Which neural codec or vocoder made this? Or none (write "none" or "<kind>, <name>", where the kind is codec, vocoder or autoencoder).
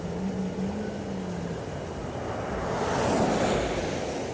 none